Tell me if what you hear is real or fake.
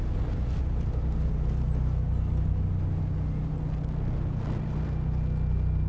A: real